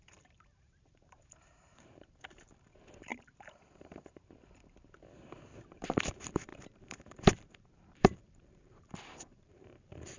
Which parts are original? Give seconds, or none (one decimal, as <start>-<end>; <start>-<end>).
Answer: none